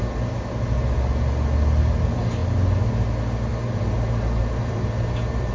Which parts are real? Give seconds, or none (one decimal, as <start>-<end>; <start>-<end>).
0.0-3.5